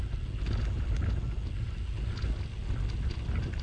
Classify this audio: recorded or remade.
recorded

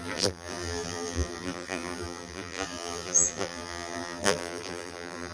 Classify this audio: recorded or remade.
remade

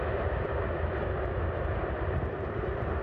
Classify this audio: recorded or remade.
recorded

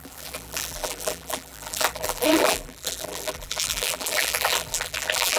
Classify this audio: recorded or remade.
remade